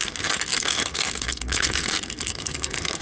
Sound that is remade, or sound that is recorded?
remade